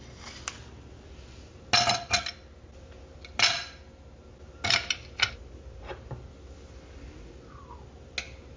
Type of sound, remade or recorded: recorded